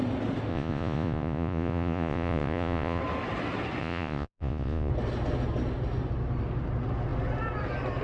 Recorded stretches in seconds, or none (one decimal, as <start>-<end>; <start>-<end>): 0.0-0.5; 3.0-3.8; 4.9-8.0